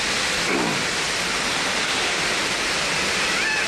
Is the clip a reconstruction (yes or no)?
no